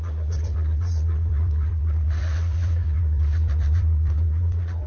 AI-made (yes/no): yes